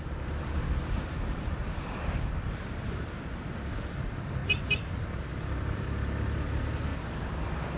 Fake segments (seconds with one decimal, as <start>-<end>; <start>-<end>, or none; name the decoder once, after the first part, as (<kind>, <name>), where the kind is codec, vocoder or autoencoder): 4.4-5.8 (vocoder, BigVGAN v2)

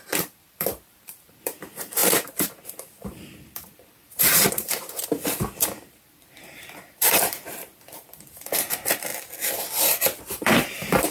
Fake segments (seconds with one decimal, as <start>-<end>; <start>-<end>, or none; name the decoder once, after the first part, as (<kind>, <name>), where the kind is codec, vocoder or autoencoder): 0.0-9.1 (vocoder, BigVGAN v2); 10.2-11.1

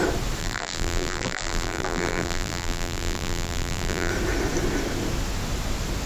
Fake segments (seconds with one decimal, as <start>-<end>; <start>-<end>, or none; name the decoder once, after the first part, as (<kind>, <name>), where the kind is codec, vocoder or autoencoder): 0.4-4.1 (vocoder, BigVGAN v2)

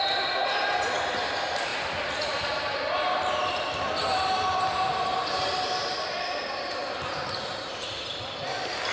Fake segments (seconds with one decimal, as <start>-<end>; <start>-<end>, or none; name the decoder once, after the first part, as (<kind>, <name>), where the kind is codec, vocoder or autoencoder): 1.7-3.8 (vocoder, BigVGAN v2); 6.8-8.2

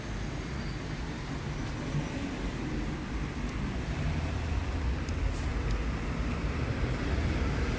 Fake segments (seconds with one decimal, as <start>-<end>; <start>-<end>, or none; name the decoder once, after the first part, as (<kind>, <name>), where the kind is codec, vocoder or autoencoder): none

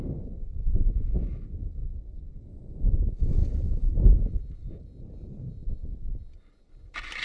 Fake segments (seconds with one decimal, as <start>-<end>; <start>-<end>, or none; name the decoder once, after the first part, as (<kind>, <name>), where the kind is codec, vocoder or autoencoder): none